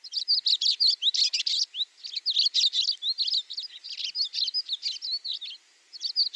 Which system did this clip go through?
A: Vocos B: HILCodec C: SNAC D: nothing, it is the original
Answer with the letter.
D